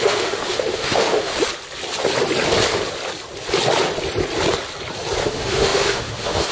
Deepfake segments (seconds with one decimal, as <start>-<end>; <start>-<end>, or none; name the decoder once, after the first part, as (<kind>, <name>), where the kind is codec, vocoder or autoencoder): 0.0-1.3 (autoencoder, DAC-VAE); 5.2-6.5